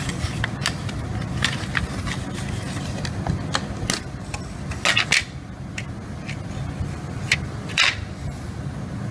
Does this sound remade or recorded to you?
recorded